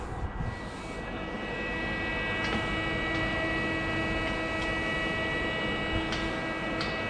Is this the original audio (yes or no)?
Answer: yes